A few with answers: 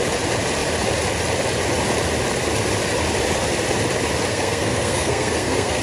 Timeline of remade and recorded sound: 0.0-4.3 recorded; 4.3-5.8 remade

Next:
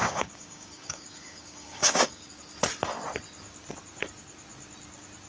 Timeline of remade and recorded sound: 0.0-2.3 remade; 2.3-5.3 recorded